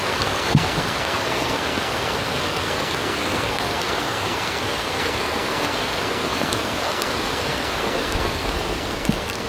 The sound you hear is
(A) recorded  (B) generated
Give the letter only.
B